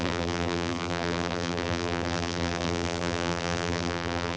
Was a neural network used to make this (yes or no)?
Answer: yes